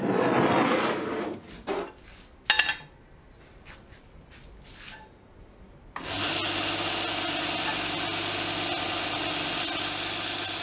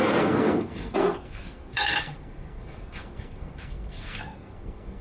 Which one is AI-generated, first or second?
second